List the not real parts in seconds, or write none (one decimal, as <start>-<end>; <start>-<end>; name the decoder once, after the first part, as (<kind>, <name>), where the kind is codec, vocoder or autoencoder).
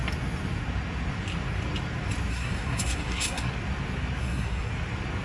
2.3-3.5 (codec, SNAC); 4.2-4.7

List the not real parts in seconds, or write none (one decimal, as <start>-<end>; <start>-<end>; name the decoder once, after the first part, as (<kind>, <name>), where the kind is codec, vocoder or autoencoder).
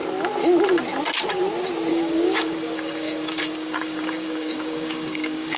1.9-5.6 (codec, DAC)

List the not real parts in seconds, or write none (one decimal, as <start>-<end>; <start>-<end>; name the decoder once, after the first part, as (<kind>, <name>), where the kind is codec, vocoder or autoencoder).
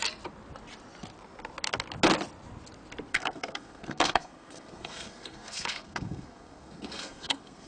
3.1-7.7 (codec, SNAC)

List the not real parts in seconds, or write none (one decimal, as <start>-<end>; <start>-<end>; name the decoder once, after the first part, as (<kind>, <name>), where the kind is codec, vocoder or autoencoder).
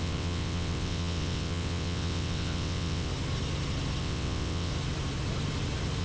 0.0-3.1 (vocoder, WaveNeXt); 4.0-4.7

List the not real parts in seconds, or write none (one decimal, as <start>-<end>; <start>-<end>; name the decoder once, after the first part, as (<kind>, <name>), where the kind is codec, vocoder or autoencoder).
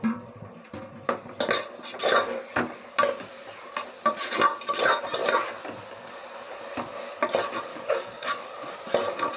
7.7-8.7 (codec, DAC)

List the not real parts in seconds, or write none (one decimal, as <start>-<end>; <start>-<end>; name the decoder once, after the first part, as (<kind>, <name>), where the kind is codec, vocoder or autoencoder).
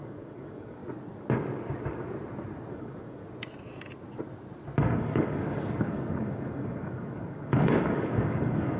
0.0-0.8 (codec, DAC); 2.7-3.2; 4.8-8.8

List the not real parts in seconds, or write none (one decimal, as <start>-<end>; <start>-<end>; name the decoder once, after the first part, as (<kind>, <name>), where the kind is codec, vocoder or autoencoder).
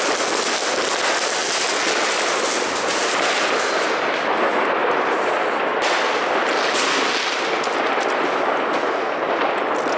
none